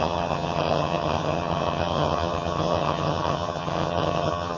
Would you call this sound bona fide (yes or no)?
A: no